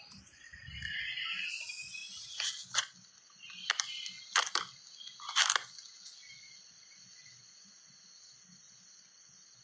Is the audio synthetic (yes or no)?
no